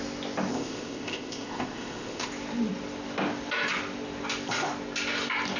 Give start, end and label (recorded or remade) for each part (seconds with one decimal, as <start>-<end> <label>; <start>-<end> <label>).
0.0-0.5 recorded; 0.5-2.3 remade; 2.3-5.6 recorded